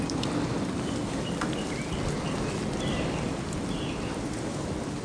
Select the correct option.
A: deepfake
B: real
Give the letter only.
B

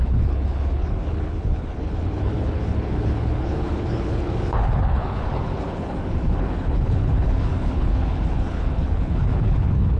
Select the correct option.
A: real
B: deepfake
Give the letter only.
B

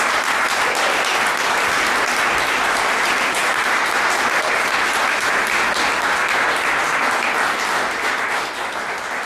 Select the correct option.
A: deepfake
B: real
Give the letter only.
B